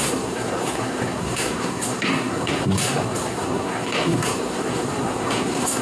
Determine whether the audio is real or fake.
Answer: fake